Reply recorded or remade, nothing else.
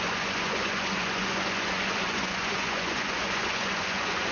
remade